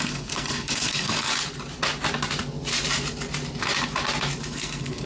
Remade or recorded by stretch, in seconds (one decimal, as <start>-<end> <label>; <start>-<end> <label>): 0.0-1.3 remade; 1.3-4.4 recorded; 4.4-5.1 remade